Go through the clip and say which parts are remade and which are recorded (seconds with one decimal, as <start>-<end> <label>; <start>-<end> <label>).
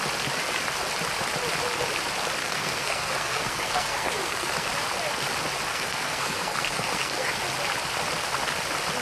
0.0-2.4 recorded; 2.4-4.7 remade; 4.7-5.7 recorded; 5.7-7.4 remade; 7.4-9.0 recorded